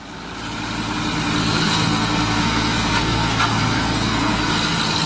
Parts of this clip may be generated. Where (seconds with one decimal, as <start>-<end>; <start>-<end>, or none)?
1.4-4.5